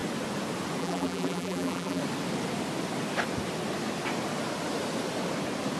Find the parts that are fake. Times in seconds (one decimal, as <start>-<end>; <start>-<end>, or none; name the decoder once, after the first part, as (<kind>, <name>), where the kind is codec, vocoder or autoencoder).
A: 0.8-2.0 (vocoder, BigVGAN v2)